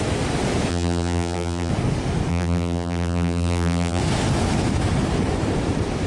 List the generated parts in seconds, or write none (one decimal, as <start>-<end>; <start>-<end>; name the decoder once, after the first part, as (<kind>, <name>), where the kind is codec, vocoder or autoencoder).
0.7-1.7 (vocoder, BigVGAN v2); 2.3-4.0